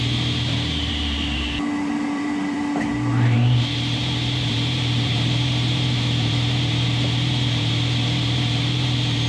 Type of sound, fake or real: fake